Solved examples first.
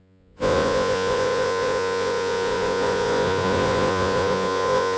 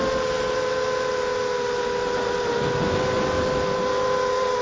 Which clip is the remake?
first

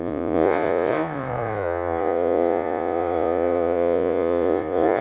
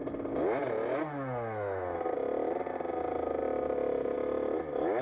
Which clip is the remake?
first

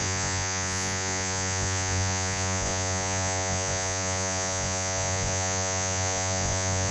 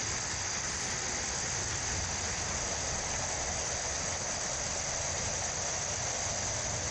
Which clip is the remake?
first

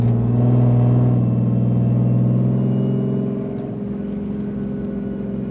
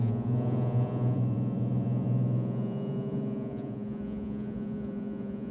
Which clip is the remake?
second